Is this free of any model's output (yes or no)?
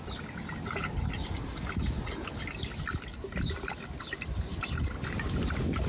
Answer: yes